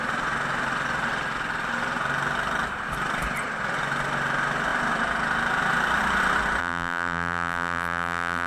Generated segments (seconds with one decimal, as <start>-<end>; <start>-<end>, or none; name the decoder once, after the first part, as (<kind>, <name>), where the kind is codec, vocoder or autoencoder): 6.6-8.5 (vocoder, BigVGAN v2)

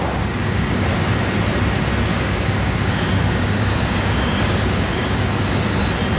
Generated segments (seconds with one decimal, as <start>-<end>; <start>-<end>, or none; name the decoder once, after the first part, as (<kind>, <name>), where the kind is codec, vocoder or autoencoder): 0.4-0.9 (codec, DAC); 2.1-5.8

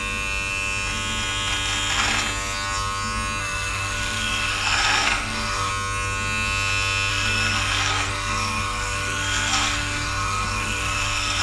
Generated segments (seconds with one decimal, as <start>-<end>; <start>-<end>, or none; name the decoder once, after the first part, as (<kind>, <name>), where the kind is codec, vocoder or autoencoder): 3.4-5.7 (codec, SNAC); 7.1-11.4

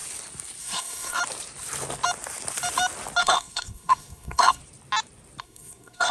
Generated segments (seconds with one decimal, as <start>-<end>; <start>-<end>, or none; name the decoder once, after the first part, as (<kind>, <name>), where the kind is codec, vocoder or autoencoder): 0.6-1.2 (codec, SNAC); 3.2-4.6; 5.4-6.1

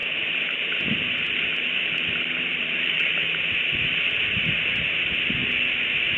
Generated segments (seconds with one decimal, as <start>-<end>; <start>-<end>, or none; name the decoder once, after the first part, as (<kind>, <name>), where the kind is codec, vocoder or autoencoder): 1.5-2.2 (vocoder, BigVGAN v2); 2.6-3.4

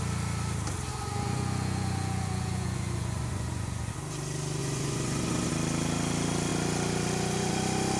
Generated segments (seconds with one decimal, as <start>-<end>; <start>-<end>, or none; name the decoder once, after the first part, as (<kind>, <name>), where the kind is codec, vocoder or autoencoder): 0.9-3.9 (vocoder, Vocos); 4.6-5.5

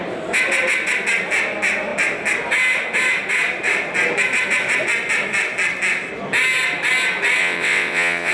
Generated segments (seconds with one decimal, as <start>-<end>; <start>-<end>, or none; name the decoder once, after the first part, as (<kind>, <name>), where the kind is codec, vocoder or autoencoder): 7.4-8.3 (vocoder, WaveNeXt)

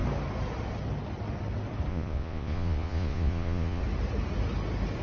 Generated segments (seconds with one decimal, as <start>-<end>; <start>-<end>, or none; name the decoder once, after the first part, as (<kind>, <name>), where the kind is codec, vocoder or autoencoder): 1.9-3.8 (vocoder, Vocos)